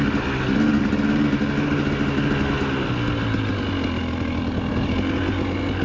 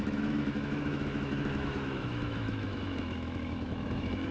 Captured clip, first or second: first